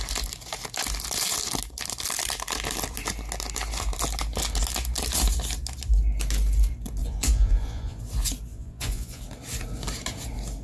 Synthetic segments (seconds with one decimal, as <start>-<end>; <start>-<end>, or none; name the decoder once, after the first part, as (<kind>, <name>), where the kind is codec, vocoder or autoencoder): 7.0-8.0 (vocoder, Vocos); 8.5-9.2